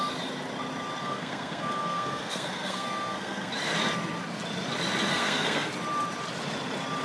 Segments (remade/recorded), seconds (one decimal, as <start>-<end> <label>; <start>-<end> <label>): 0.0-1.0 recorded; 1.0-3.5 remade; 3.5-5.1 recorded; 5.1-5.7 remade; 5.7-7.0 recorded